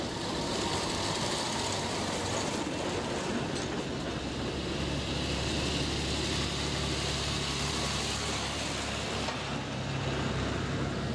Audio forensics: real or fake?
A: real